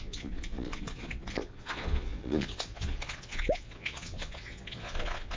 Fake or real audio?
fake